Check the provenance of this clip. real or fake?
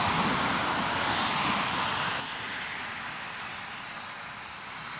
real